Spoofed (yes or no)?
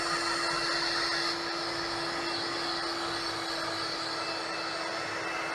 no